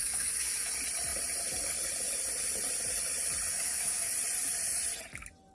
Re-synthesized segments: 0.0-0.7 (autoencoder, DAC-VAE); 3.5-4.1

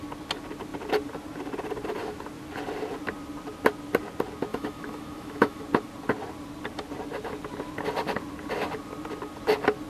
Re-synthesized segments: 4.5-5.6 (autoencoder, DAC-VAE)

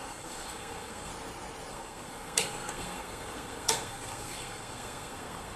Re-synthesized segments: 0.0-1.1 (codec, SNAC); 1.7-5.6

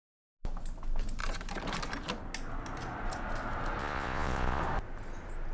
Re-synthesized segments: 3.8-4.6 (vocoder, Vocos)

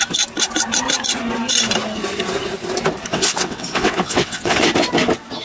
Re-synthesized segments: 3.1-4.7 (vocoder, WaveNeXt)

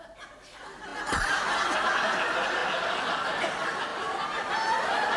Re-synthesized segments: none